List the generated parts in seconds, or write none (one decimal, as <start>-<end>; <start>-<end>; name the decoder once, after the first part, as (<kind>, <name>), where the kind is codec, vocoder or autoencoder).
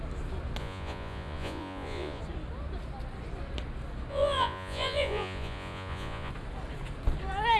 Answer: 0.6-2.2 (vocoder, Vocos); 4.1-6.3